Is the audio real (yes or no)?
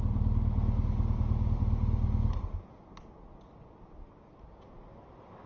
yes